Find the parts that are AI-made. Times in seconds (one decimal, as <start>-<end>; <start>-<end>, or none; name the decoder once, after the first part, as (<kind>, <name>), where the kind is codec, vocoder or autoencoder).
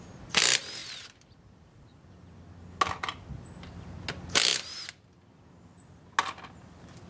0.8-2.3 (vocoder, BigVGAN v2); 4.5-5.3